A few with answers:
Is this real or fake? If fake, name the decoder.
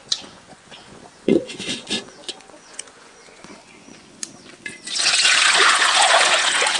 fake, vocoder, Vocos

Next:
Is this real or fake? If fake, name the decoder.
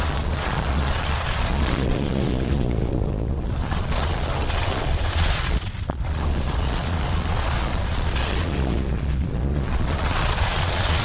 fake, vocoder, Vocos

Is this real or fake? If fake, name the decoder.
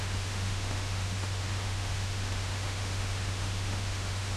fake, autoencoder, DAC-VAE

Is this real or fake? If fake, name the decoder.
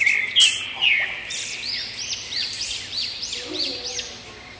fake, vocoder, BigVGAN v2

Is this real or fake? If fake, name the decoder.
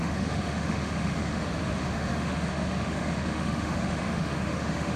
fake, autoencoder, DAC-VAE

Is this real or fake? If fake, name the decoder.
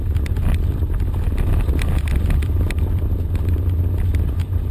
real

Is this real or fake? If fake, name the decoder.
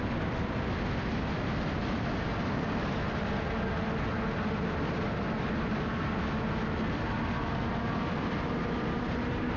real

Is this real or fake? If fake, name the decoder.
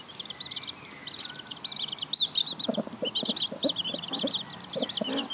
real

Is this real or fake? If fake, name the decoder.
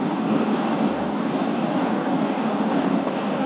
fake, codec, DAC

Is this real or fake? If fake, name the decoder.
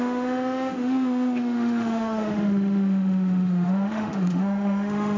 fake, autoencoder, DAC-VAE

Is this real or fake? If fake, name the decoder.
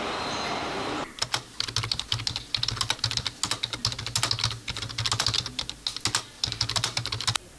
real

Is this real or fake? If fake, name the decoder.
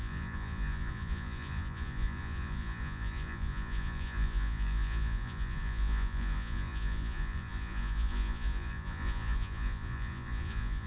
fake, vocoder, Vocos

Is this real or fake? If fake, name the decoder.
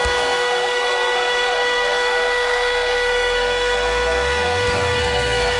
fake, codec, SNAC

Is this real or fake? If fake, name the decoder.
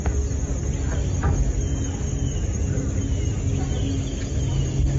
real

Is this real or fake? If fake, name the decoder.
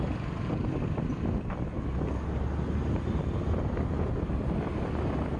real